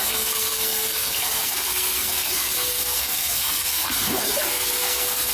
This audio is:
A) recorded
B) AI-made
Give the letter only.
B